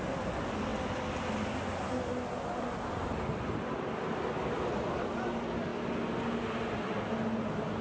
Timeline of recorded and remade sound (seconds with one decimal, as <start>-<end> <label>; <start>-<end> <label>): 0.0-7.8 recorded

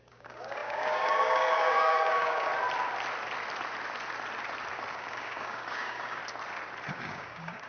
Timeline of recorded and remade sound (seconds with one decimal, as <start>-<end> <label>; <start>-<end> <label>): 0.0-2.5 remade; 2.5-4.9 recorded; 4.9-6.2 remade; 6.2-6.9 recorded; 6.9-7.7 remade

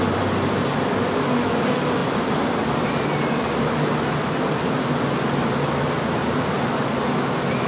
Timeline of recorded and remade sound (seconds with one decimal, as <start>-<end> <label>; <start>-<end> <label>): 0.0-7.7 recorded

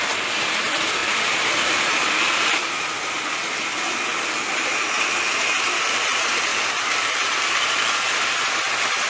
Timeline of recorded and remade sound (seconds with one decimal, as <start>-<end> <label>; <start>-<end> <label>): 0.0-9.1 recorded

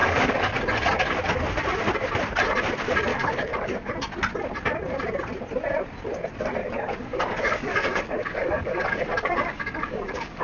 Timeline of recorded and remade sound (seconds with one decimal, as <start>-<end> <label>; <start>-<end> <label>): 0.0-0.6 remade; 0.6-3.1 recorded; 3.1-3.9 remade; 3.9-6.6 recorded; 6.6-10.4 remade

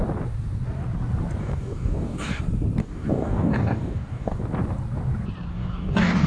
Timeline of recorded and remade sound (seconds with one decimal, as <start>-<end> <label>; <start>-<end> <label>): 0.0-1.4 recorded; 1.4-2.4 remade; 2.4-2.8 recorded; 2.8-4.4 remade; 4.4-5.5 recorded; 5.5-6.3 remade

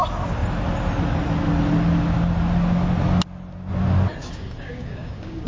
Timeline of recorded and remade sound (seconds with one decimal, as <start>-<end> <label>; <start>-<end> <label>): 0.0-4.2 recorded; 4.2-5.5 remade